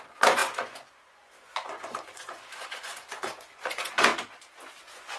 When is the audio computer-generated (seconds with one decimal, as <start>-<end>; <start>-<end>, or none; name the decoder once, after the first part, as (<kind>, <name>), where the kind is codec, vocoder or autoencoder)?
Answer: 0.0-4.1 (vocoder, Vocos); 4.8-5.2